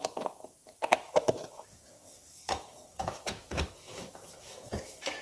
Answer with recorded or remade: remade